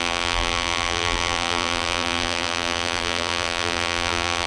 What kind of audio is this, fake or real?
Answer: fake